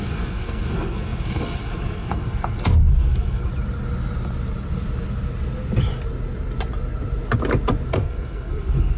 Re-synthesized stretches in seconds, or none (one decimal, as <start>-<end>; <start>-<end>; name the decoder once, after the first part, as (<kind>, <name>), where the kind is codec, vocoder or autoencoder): 0.0-3.5 (codec, SNAC); 7.9-9.0